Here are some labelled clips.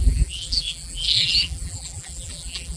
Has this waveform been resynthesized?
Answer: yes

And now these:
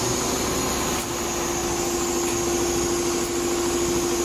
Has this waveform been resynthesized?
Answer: no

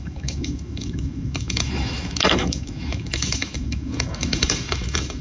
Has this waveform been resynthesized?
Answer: yes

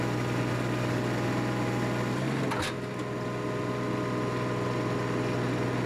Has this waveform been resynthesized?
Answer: no